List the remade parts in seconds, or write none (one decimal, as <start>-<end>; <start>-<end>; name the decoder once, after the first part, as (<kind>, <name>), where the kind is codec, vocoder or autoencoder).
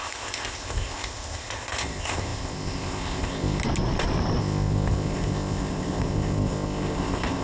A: 0.0-3.6 (codec, ZipCodec); 4.4-7.4